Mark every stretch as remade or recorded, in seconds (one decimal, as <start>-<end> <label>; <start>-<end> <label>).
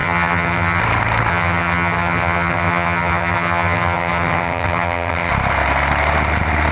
0.0-0.8 remade; 0.8-1.3 recorded; 1.3-5.3 remade; 5.3-6.7 recorded